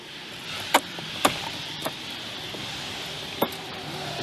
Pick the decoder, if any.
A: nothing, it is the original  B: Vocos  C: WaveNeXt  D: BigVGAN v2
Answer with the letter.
D